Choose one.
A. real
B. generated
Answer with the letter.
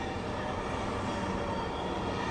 A